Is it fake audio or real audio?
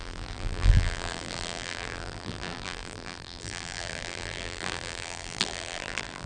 fake